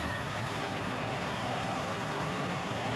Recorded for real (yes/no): no